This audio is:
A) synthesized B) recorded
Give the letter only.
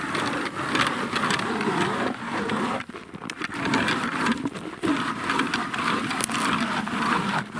B